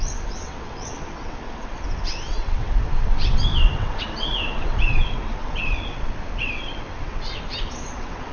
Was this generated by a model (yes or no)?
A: yes